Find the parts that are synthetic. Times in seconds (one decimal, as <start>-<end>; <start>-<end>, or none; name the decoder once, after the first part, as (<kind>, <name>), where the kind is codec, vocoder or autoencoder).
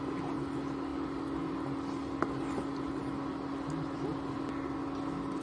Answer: none